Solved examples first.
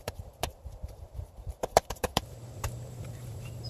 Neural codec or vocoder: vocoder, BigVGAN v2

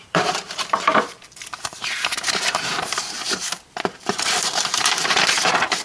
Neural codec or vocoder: vocoder, BigVGAN v2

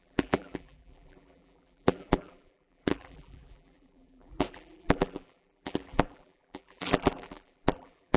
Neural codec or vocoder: vocoder, BigVGAN v2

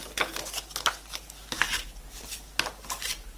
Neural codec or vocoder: none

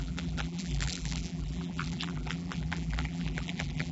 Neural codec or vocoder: vocoder, BigVGAN v2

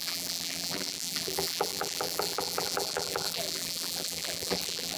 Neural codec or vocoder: vocoder, BigVGAN v2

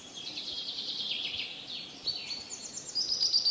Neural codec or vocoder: none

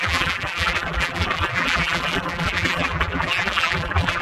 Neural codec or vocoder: vocoder, BigVGAN v2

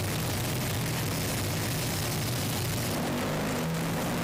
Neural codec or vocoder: none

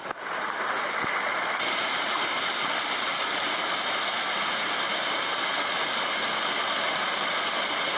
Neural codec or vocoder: none